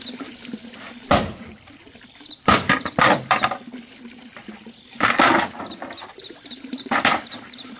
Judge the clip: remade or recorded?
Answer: remade